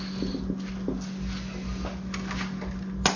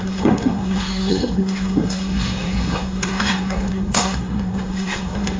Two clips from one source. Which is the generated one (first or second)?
second